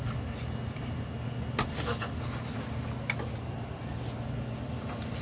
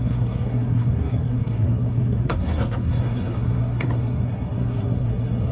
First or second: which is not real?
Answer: second